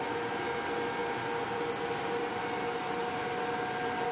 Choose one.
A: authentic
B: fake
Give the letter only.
A